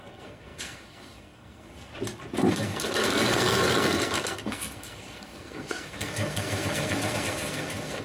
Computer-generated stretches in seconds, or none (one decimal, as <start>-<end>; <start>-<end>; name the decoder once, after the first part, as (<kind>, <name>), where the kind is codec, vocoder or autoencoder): 0.0-1.9 (codec, SNAC); 2.5-8.0